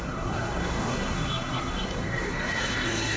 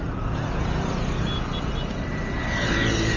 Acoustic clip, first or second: second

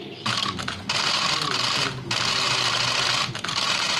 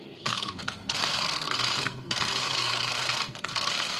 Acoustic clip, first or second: first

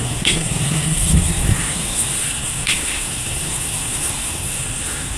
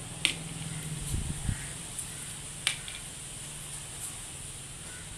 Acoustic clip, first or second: second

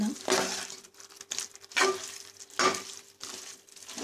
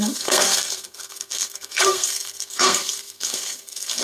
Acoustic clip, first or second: first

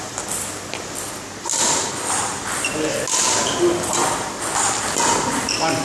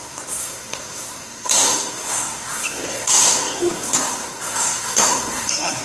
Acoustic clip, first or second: first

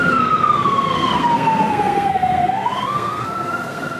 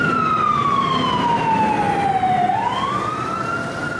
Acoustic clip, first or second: second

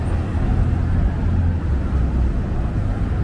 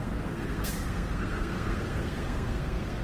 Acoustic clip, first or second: first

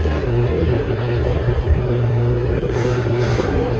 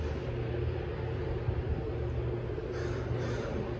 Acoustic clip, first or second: second